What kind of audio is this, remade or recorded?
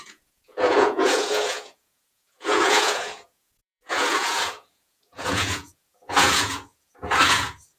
remade